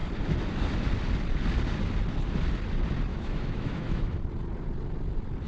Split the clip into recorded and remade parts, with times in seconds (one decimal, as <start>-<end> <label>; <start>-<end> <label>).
0.0-3.1 recorded; 3.1-4.2 remade; 4.2-5.5 recorded